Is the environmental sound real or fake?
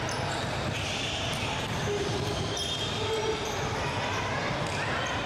real